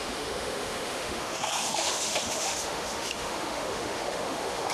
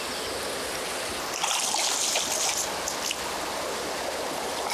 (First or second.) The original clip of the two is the second